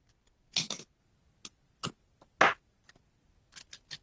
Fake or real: real